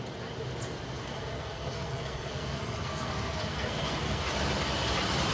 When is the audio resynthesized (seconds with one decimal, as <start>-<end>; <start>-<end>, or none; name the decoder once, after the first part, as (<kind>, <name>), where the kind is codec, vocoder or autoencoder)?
1.0-4.2 (codec, SNAC)